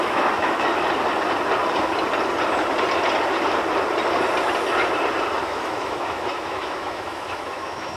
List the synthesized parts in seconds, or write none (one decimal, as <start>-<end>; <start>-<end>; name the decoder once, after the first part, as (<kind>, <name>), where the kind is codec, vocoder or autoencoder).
0.0-0.7 (autoencoder, DAC-VAE); 5.4-8.0